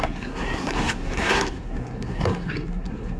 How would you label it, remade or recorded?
remade